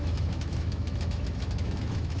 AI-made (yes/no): yes